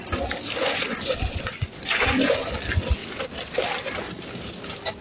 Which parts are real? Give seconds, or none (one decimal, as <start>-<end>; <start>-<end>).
0.0-0.6; 2.5-5.0